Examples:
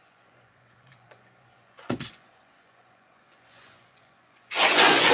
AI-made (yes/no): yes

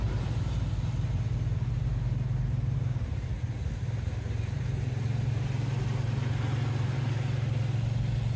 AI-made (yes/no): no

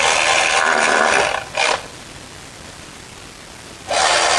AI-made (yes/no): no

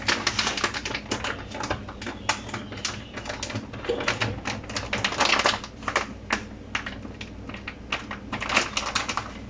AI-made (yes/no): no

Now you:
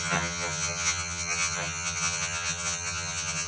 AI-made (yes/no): yes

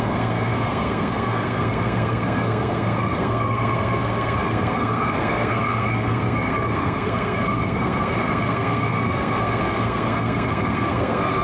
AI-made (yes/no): yes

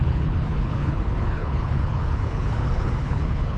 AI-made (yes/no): yes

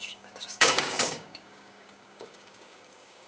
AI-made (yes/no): yes